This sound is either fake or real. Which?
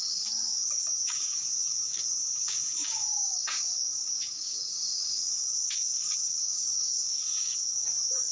fake